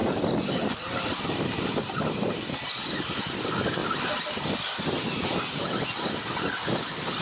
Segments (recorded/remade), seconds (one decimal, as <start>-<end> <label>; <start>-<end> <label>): 0.0-7.2 recorded